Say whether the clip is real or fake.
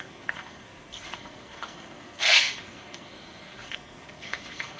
fake